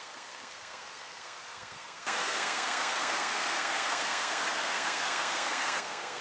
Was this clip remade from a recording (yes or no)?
yes